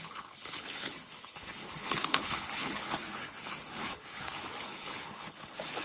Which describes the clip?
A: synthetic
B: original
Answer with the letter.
A